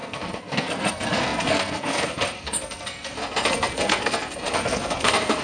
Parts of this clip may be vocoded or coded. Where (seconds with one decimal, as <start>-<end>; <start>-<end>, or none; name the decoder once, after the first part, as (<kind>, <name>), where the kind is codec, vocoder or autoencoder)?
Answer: 0.0-5.4 (codec, SNAC)